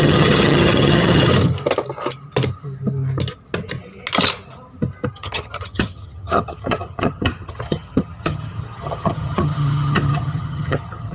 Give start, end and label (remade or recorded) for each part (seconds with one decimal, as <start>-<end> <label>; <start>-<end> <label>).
0.0-1.3 remade; 1.3-5.1 recorded; 5.1-11.1 remade